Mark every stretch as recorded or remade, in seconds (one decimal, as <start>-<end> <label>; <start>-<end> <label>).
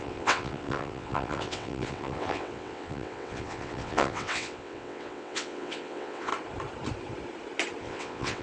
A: 0.0-6.3 remade; 6.3-7.8 recorded; 7.8-8.4 remade